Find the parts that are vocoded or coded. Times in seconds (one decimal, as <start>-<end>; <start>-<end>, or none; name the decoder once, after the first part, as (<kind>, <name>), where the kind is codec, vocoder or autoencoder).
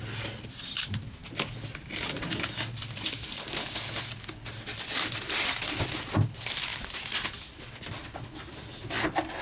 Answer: none